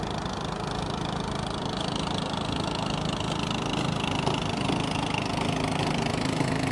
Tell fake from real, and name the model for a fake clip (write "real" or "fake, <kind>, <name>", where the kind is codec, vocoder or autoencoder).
real